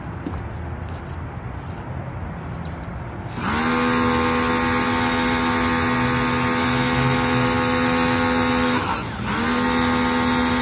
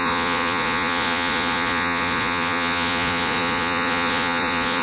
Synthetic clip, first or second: second